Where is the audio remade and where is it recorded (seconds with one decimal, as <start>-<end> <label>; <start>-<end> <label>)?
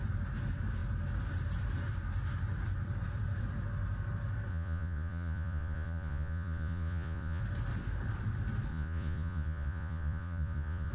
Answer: 0.0-4.5 recorded; 4.5-7.4 remade; 7.4-8.7 recorded; 8.7-10.9 remade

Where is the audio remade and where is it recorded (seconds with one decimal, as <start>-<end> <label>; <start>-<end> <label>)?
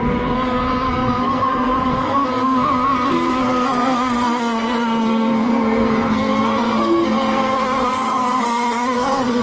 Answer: 0.0-9.4 remade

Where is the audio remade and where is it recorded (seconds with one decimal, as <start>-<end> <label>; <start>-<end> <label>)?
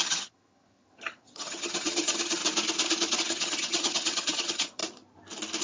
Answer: 0.0-2.4 remade; 2.4-3.2 recorded; 3.2-4.8 remade; 4.8-5.6 recorded